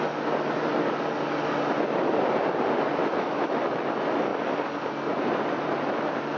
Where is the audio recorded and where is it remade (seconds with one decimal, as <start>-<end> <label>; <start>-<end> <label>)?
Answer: 0.0-3.0 recorded; 3.0-3.6 remade; 3.6-6.4 recorded